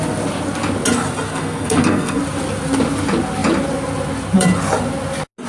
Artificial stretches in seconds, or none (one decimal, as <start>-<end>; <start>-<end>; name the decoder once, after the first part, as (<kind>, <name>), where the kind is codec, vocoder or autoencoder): 1.3-2.2 (codec, SNAC)